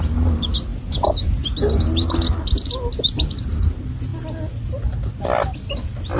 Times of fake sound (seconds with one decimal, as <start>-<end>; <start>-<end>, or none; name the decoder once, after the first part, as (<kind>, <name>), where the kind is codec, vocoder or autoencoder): none